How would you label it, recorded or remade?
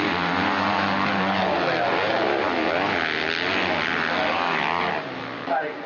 recorded